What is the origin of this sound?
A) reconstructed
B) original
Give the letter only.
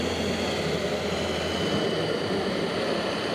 B